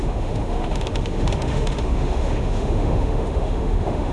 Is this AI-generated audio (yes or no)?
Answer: yes